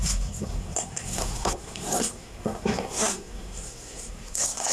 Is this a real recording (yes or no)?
no